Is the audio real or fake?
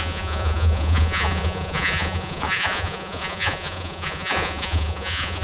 fake